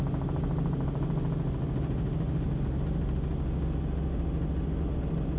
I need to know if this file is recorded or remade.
recorded